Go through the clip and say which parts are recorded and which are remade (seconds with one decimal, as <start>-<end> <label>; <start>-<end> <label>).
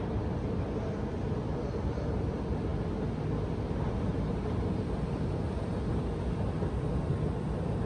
0.0-7.9 recorded